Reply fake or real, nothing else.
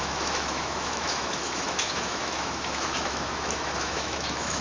fake